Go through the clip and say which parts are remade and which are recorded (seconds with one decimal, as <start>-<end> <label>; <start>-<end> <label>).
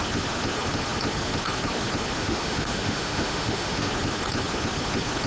0.0-2.2 recorded; 2.2-3.9 remade; 3.9-5.3 recorded